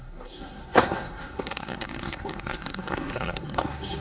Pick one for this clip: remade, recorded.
remade